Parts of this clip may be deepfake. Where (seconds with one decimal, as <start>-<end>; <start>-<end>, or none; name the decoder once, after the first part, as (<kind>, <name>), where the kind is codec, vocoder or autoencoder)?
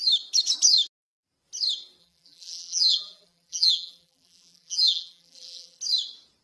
2.0-5.8 (vocoder, BigVGAN v2)